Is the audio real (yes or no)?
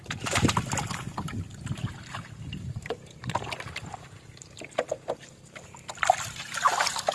yes